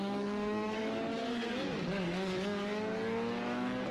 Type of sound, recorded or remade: remade